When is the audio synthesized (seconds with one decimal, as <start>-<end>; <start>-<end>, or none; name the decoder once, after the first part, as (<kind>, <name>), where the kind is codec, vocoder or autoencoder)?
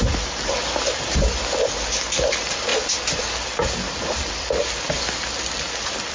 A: none